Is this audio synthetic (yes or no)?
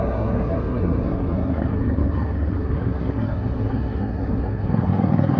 yes